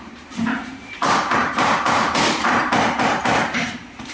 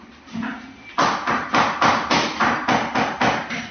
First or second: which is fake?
first